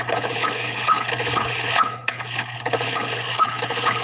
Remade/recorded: remade